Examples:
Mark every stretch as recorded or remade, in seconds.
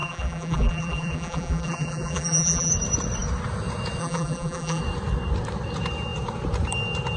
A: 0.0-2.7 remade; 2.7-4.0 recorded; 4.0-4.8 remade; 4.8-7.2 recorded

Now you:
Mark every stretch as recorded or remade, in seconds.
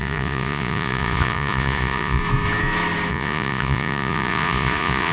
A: 0.0-2.2 remade; 2.2-3.1 recorded; 3.1-5.1 remade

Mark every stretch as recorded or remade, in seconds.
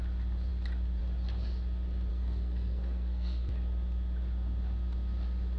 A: 0.0-2.1 recorded; 2.1-3.5 remade; 3.5-5.6 recorded